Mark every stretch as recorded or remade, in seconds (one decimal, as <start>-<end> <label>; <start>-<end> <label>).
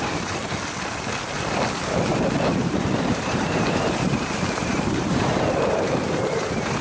0.0-0.4 remade; 0.4-2.6 recorded; 2.6-6.8 remade